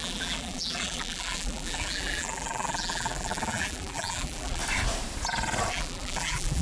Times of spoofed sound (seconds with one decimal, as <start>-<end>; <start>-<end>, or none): 0.0-4.6; 5.7-6.6